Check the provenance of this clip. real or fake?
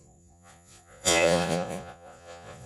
fake